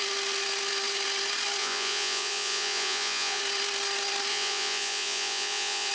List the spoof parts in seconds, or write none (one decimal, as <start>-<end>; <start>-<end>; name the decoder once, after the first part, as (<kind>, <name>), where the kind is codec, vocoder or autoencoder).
1.6-3.4 (vocoder, Vocos); 4.3-5.9